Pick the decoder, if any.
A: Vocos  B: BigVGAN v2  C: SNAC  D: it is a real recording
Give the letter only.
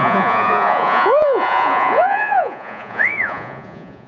A